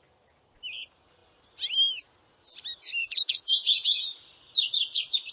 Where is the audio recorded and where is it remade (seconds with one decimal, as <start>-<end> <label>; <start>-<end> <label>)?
0.0-3.0 recorded; 3.0-4.0 remade; 4.0-5.3 recorded